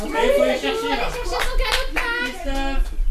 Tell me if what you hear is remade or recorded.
recorded